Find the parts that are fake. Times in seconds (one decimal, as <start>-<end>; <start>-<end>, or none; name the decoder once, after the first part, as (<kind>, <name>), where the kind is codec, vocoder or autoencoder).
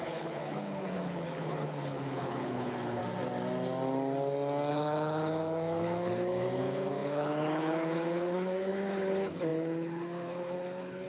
0.0-3.0 (codec, HILCodec); 4.7-11.1